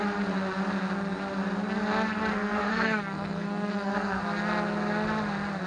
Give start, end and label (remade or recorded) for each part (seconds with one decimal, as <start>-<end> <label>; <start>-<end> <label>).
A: 0.0-2.3 recorded; 2.3-4.2 remade; 4.2-5.7 recorded